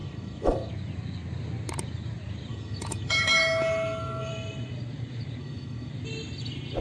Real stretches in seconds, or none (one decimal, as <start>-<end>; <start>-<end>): 0.7-2.5; 4.3-5.4; 5.9-6.8